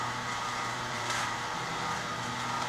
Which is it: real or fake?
fake